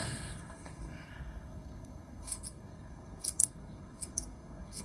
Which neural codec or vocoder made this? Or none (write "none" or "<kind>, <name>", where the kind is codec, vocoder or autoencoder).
codec, SNAC